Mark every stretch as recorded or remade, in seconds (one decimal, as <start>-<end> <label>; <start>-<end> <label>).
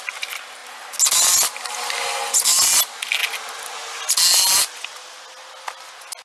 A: 0.0-6.2 recorded